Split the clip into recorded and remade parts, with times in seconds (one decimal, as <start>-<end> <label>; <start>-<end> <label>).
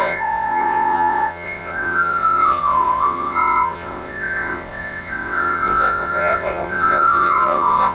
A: 0.0-7.9 remade